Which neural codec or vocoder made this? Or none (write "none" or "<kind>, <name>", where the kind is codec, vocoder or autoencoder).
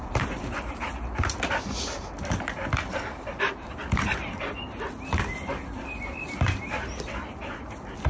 none